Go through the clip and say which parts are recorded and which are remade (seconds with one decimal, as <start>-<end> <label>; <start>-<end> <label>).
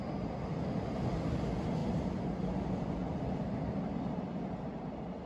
0.0-1.8 recorded; 1.8-4.5 remade; 4.5-5.3 recorded